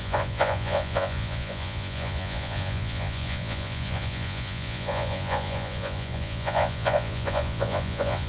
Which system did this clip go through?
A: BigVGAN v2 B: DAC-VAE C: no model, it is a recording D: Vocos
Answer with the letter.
D